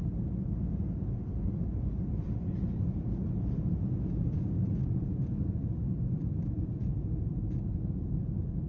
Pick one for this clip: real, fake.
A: real